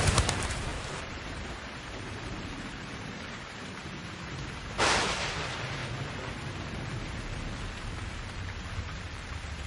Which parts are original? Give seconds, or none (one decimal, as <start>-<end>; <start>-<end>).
5.8-7.1